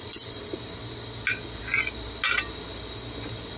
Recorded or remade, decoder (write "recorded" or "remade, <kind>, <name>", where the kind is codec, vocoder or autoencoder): recorded